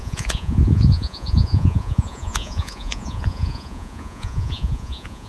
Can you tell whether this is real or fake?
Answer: fake